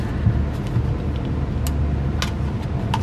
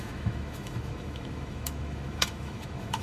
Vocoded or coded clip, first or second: second